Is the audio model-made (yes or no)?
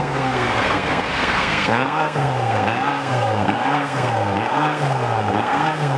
yes